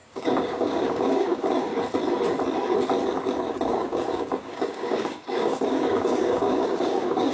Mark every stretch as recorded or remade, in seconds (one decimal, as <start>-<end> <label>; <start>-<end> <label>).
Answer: 0.0-1.7 remade; 1.7-3.5 recorded; 3.5-7.3 remade